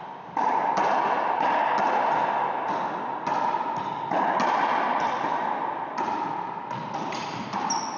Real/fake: real